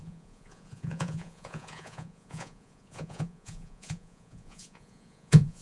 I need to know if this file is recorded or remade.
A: remade